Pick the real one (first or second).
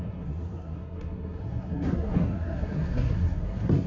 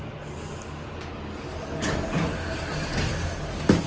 second